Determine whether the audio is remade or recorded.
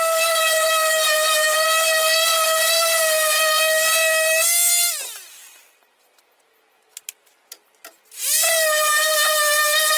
recorded